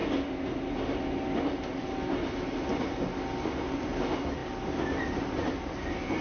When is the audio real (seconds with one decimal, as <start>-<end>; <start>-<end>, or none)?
0.0-6.2

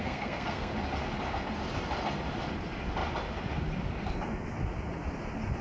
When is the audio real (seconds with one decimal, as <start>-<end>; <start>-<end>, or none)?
0.7-5.6

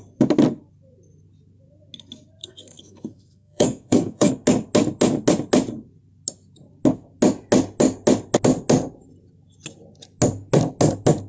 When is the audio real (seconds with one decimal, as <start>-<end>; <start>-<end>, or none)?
0.0-2.4; 4.3-11.3

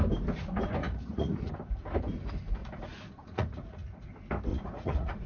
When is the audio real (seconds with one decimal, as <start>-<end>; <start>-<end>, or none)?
0.0-0.8; 1.5-2.6; 4.1-4.5

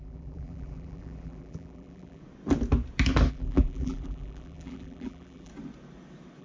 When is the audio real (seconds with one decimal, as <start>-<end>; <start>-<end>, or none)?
2.2-3.3; 5.5-6.4